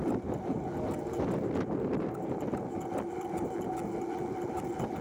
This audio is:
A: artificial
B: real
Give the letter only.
B